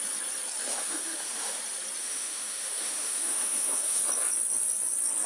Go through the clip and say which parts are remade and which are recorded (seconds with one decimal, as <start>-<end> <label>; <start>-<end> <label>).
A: 0.0-0.7 recorded; 0.7-1.6 remade; 1.6-2.0 recorded; 2.0-4.0 remade; 4.0-5.3 recorded